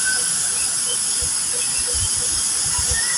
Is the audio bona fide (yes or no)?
yes